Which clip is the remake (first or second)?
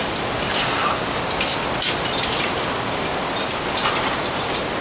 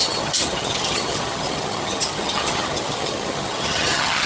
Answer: second